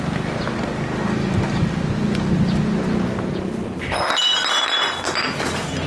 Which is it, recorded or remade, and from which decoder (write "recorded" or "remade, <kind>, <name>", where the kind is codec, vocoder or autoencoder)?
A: recorded